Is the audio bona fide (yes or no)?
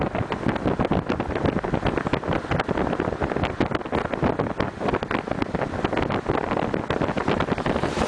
yes